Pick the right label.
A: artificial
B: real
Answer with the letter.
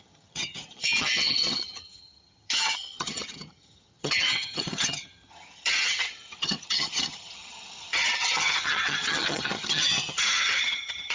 A